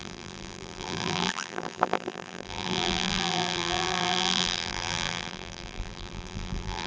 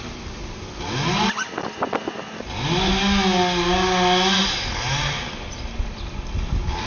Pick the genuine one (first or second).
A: second